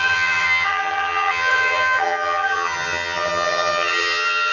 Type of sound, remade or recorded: remade